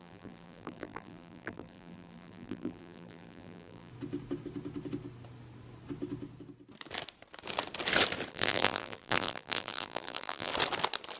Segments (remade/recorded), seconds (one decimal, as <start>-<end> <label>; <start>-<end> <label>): 0.0-3.9 remade; 3.9-8.3 recorded; 8.3-10.5 remade; 10.5-11.2 recorded